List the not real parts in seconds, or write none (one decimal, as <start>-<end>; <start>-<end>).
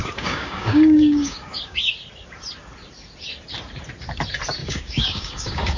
0.0-1.9; 4.6-5.8